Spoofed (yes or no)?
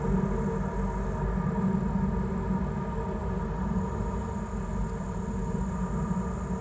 no